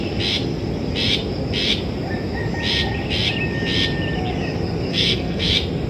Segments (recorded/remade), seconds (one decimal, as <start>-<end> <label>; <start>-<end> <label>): 0.0-4.9 recorded; 4.9-5.5 remade; 5.5-5.9 recorded